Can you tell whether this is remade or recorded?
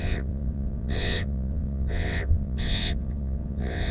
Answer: remade